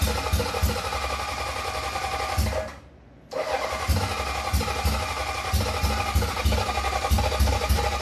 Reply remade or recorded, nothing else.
recorded